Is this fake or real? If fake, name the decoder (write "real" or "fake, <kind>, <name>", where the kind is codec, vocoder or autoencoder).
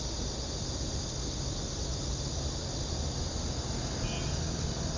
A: real